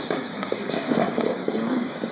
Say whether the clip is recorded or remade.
remade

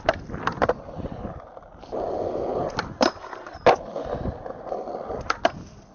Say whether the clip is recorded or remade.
recorded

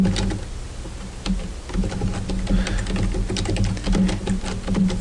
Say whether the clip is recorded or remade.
recorded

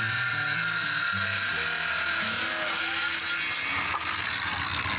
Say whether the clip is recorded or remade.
recorded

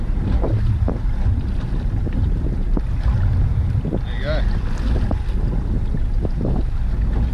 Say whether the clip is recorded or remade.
recorded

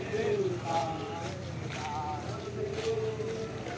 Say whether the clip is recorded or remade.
recorded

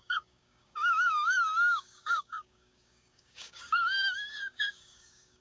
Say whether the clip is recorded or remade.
remade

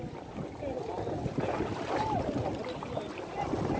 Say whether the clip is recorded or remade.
recorded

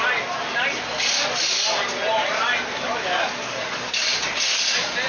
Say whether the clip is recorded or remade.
recorded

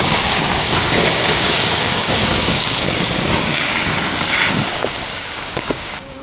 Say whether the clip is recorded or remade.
remade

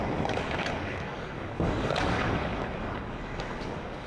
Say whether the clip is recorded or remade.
remade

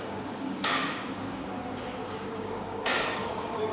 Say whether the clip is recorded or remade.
remade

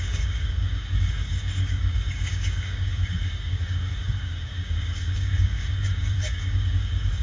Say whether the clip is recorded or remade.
remade